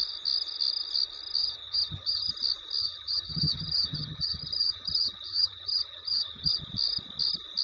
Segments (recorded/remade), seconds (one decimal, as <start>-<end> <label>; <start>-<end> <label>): 0.0-1.4 recorded; 1.4-2.3 remade; 2.3-2.8 recorded; 2.8-6.6 remade; 6.6-7.6 recorded